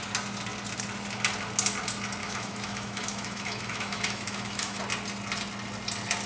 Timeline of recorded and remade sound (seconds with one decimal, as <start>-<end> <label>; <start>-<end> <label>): 0.0-2.2 recorded; 2.2-4.8 remade; 4.8-6.3 recorded